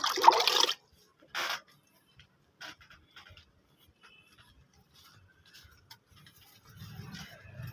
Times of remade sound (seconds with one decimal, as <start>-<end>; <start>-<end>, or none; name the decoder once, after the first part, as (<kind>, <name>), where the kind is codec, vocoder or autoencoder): none